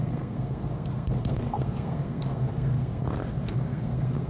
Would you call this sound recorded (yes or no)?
no